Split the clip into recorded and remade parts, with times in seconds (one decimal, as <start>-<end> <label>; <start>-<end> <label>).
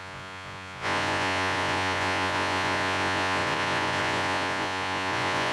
0.0-5.5 remade